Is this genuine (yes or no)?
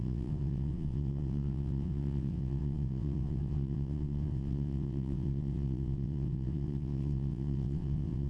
no